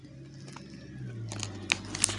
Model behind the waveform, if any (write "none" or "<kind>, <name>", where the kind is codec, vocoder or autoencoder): none